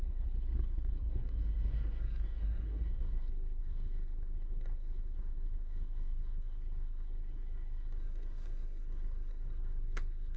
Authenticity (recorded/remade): remade